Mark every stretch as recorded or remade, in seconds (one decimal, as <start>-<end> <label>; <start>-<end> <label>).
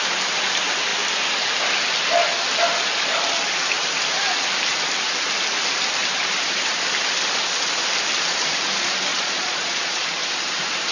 0.0-9.1 recorded; 9.1-10.0 remade; 10.0-10.9 recorded